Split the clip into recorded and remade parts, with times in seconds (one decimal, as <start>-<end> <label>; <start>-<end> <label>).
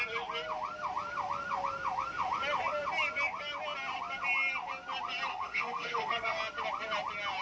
0.0-5.3 recorded; 5.3-6.4 remade; 6.4-7.4 recorded